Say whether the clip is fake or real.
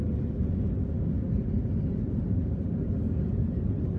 real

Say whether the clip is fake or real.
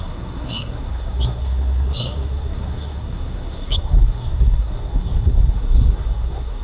fake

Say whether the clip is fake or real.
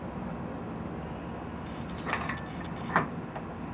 real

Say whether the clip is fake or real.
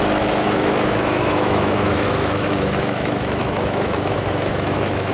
fake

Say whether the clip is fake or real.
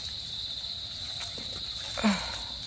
real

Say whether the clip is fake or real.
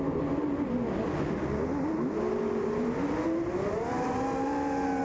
real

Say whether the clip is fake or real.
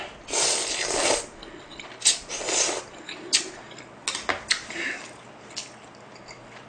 real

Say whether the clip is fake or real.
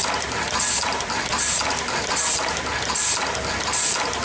real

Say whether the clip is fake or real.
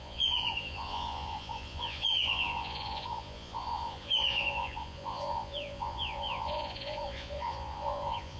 fake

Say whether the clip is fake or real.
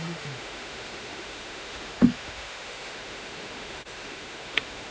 fake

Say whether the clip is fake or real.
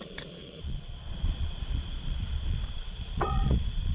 fake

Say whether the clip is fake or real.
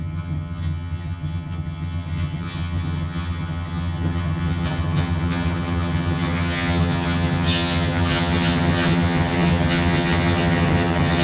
fake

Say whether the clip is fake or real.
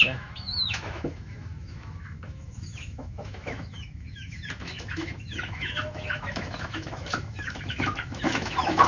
fake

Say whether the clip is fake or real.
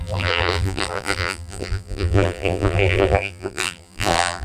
fake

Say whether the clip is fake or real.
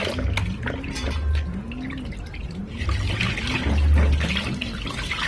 real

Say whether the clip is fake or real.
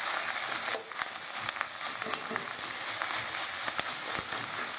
real